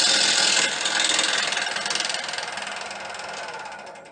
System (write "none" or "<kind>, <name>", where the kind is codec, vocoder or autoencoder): none